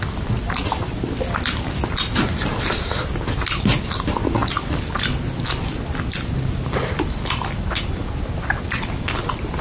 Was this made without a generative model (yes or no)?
yes